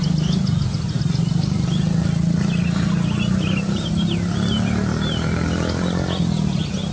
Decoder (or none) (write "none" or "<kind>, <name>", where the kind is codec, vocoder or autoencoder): none